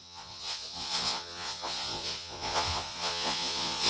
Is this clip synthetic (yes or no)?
yes